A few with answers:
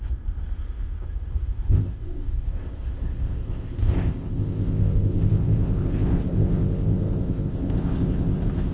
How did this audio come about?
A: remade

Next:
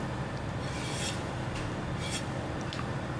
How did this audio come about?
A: recorded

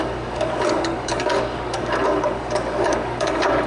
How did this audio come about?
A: remade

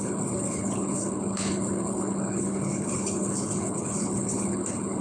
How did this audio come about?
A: remade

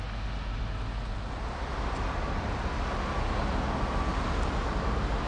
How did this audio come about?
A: recorded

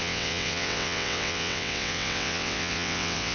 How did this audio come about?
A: remade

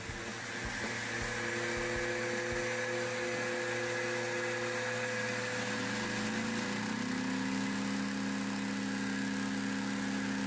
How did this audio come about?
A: recorded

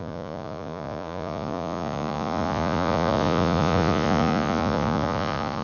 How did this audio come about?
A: remade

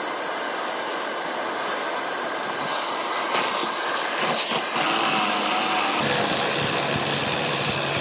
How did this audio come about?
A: recorded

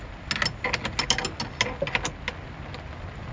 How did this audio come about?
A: recorded